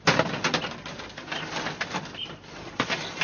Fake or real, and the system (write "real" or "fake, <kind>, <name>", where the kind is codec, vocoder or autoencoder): real